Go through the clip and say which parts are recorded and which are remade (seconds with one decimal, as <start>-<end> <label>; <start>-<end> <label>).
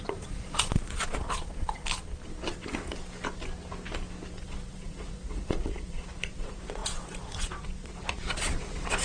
0.0-1.8 remade; 1.8-4.4 recorded; 4.4-9.0 remade